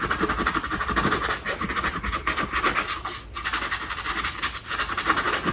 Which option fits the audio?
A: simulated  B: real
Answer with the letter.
B